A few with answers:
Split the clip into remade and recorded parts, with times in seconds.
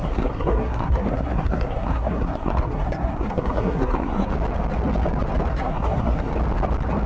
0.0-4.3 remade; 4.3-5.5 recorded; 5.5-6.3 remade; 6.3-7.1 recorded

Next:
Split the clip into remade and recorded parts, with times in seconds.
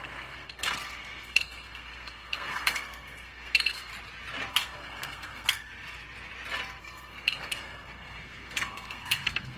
0.0-3.9 remade; 3.9-4.5 recorded; 4.5-5.7 remade; 5.7-6.8 recorded; 6.8-9.6 remade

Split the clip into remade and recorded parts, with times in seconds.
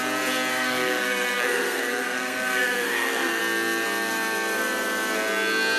0.0-0.5 recorded; 0.5-3.4 remade; 3.4-5.8 recorded